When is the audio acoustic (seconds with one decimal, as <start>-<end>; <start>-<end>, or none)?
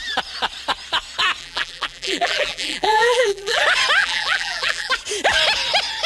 0.0-1.4; 3.6-4.0; 4.9-6.1